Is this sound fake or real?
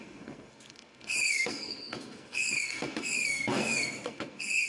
fake